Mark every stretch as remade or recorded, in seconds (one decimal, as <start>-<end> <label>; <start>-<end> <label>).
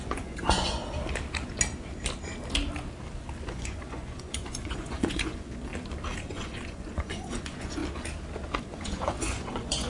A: 0.0-0.8 remade; 0.8-3.5 recorded; 3.5-5.7 remade; 5.7-6.2 recorded; 6.2-7.8 remade; 7.8-8.6 recorded; 8.6-9.9 remade